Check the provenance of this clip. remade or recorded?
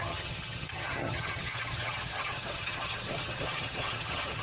remade